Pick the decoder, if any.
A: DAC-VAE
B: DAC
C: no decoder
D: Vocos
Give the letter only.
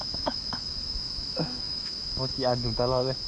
A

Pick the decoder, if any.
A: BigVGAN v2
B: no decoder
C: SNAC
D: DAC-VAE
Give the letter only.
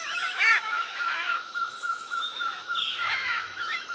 D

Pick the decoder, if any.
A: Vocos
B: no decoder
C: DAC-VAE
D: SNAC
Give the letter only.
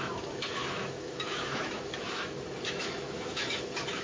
C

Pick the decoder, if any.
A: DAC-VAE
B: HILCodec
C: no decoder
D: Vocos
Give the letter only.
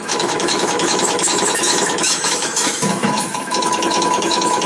A